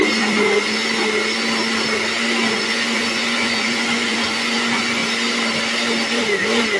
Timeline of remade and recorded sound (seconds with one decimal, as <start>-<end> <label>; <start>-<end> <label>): 0.0-0.8 remade; 0.8-2.5 recorded; 2.5-5.0 remade; 5.0-6.8 recorded